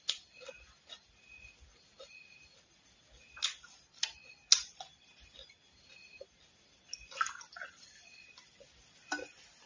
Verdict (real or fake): real